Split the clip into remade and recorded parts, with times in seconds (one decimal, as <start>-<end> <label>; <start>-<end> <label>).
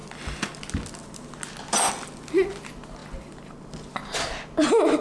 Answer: 0.0-5.0 recorded